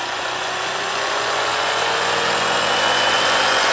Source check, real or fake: fake